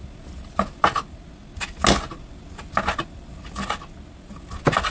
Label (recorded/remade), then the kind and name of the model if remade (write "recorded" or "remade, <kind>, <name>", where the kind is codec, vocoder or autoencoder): recorded